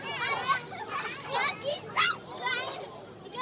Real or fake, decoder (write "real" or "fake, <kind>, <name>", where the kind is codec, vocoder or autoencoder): real